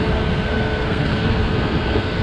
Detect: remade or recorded remade